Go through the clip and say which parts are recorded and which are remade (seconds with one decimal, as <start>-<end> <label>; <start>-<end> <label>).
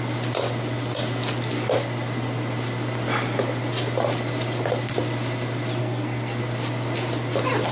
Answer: 0.0-5.8 recorded; 5.8-6.4 remade; 6.4-7.7 recorded